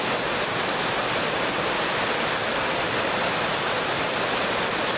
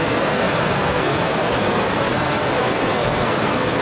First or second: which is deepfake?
second